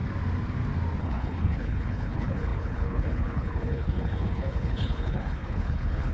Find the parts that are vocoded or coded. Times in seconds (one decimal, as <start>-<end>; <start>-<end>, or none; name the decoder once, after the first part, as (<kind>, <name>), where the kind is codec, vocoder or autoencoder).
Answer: 1.0-6.1 (codec, HILCodec)